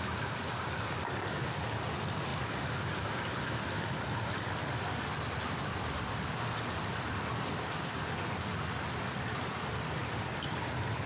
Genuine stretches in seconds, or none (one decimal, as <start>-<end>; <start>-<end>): 0.0-11.1